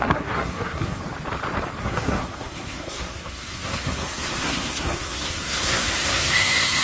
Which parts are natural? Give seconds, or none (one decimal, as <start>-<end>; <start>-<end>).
1.0-1.8